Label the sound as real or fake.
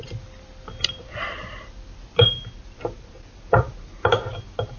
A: real